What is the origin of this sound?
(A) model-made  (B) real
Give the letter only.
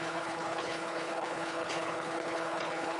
A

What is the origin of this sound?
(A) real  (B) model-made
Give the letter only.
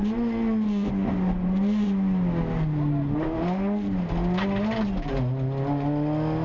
A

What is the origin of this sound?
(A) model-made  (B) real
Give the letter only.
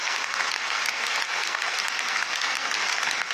A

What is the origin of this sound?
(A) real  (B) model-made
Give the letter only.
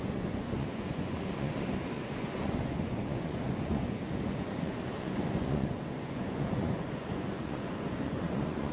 B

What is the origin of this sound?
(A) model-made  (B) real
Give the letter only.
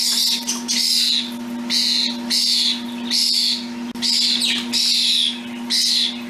B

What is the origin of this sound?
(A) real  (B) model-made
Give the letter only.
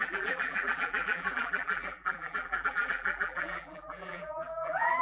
B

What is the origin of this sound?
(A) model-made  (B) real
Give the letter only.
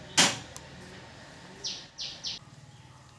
B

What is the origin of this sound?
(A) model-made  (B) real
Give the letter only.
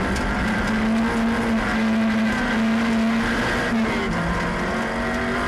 B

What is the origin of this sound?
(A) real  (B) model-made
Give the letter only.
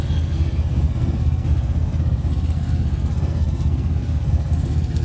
B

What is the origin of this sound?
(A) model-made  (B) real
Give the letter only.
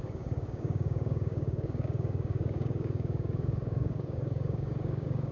A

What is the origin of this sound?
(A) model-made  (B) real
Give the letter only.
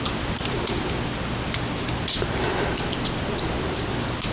B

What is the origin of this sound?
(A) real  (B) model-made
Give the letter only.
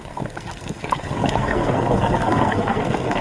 B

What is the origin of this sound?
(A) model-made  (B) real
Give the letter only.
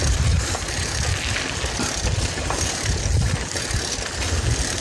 B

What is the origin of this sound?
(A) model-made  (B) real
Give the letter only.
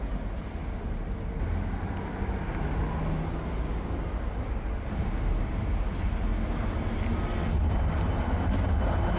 B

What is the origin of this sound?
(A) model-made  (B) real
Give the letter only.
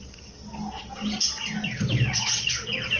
B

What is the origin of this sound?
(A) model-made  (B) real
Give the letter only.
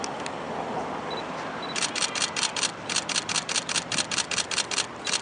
B